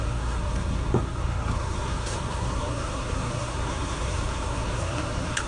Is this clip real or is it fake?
fake